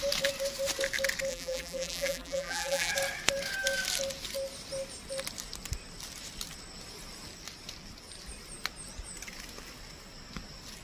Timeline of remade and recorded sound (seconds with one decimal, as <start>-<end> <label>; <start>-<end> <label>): 0.0-1.3 recorded; 1.3-2.9 remade; 2.9-10.8 recorded